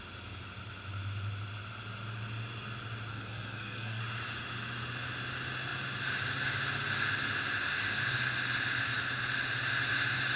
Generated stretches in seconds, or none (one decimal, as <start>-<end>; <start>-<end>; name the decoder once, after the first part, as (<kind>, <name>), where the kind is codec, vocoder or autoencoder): 3.1-4.0 (codec, SNAC)